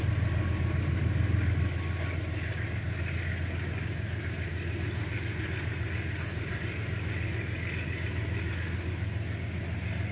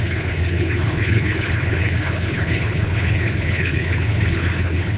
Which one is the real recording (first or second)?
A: first